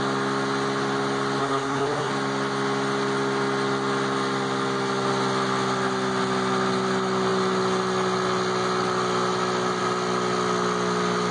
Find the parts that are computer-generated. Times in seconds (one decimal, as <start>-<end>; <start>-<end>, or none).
1.4-2.1